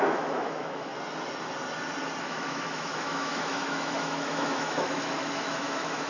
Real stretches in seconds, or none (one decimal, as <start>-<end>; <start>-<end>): 0.9-2.2